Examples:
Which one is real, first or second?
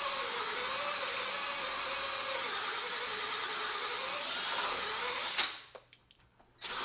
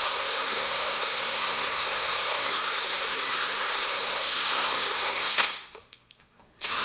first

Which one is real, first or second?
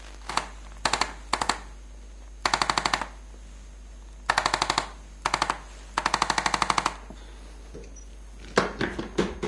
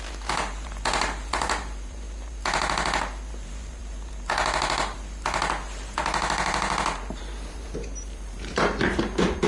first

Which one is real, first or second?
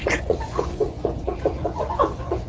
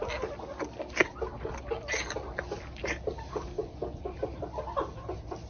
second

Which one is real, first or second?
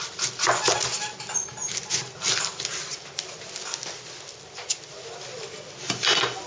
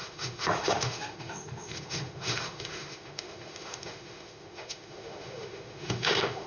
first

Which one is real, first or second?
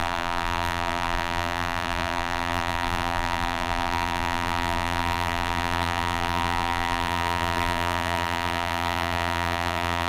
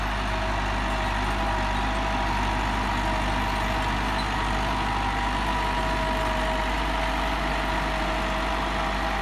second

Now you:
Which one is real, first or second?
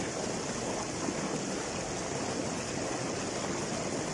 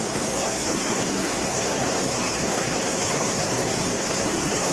first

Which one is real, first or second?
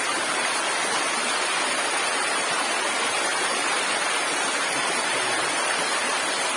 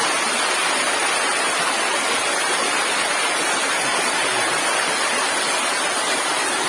second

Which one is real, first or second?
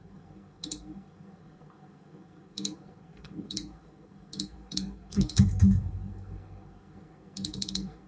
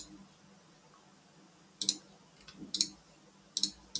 second